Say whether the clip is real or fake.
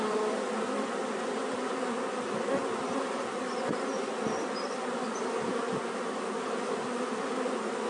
real